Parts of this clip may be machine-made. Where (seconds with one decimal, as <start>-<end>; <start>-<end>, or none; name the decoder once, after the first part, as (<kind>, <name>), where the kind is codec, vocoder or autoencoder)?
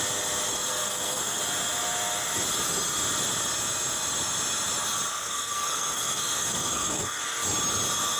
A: 0.5-1.4 (codec, SNAC); 5.1-7.2